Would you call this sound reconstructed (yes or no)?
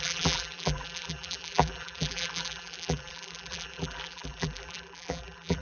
yes